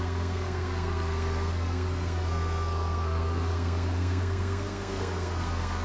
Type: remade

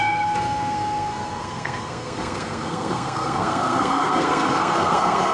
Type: remade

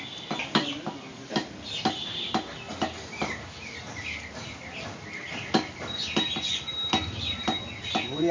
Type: recorded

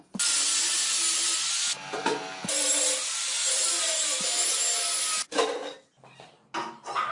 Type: recorded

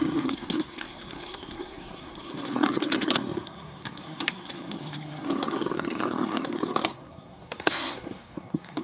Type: remade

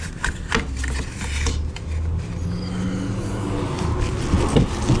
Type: recorded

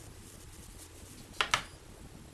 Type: recorded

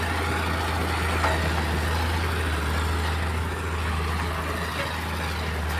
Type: recorded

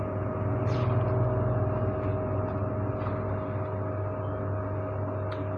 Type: recorded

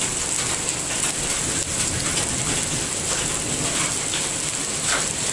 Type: recorded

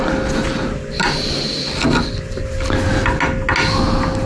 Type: recorded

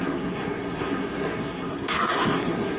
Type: remade